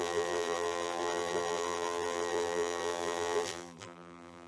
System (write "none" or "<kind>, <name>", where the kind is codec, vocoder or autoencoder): vocoder, BigVGAN v2